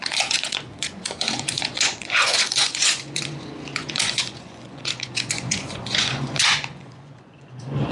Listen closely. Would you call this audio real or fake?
fake